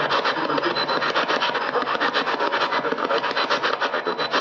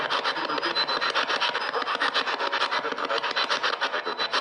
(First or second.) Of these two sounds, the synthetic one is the first